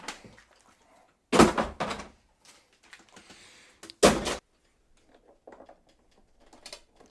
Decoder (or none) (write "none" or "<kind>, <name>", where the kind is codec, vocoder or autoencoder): none